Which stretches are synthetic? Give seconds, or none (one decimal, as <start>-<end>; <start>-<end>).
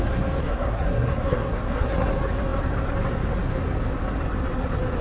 0.4-2.1